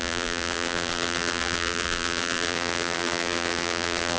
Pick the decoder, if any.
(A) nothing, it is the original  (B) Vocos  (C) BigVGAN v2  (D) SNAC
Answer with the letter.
C